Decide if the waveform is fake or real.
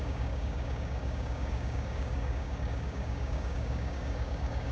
fake